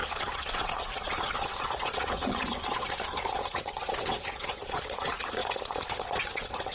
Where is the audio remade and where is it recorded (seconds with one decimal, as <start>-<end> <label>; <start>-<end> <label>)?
0.0-6.7 remade